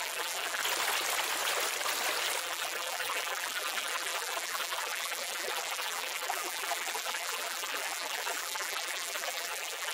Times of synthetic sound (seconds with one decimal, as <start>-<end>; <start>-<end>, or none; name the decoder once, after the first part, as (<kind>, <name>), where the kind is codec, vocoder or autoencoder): 0.0-0.6 (vocoder, BigVGAN v2); 2.4-9.9